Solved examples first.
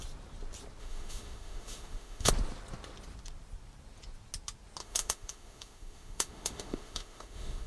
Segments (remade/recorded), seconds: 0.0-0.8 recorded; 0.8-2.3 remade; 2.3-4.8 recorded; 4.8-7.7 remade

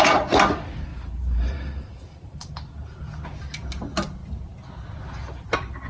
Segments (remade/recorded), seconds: 0.0-0.9 recorded; 0.9-2.5 remade; 2.5-5.9 recorded

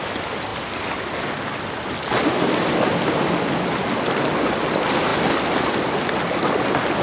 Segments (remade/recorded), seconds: 0.0-7.0 recorded

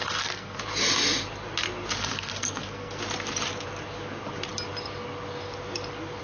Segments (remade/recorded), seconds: 0.0-0.6 remade; 0.6-2.0 recorded; 2.0-3.0 remade; 3.0-6.2 recorded

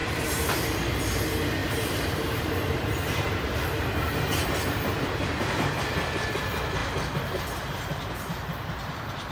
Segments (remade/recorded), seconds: 0.0-1.0 remade; 1.0-1.6 recorded; 1.6-4.2 remade; 4.2-6.8 recorded; 6.8-7.4 remade; 7.4-9.3 recorded

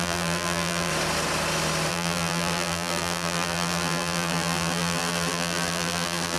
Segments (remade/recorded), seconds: 0.0-0.9 remade; 0.9-1.9 recorded; 1.9-6.4 remade

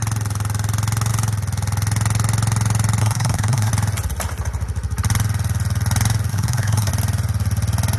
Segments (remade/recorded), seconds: 0.0-3.0 recorded; 3.0-3.7 remade; 3.7-6.3 recorded; 6.3-6.9 remade; 6.9-8.0 recorded